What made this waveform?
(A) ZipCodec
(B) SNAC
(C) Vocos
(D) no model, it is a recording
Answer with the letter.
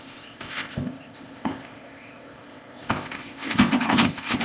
A